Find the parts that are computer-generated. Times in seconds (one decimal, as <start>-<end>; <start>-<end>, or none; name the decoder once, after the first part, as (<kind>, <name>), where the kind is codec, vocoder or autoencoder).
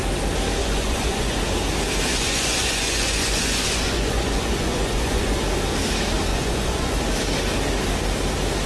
0.6-1.4 (vocoder, Vocos); 2.1-5.4; 6.3-7.0